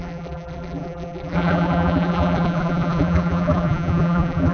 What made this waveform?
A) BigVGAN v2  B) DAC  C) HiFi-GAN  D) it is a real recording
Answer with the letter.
A